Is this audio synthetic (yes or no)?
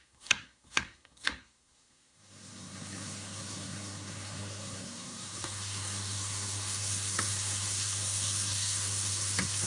yes